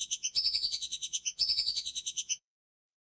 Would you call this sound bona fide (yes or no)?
no